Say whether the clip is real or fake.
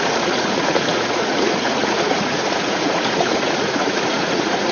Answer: fake